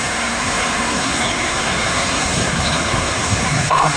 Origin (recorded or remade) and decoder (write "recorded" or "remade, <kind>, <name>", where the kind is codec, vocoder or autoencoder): remade, codec, SNAC